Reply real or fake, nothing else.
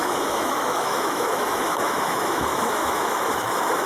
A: fake